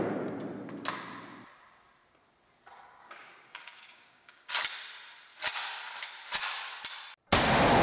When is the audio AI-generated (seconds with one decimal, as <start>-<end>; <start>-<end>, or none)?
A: 3.0-4.5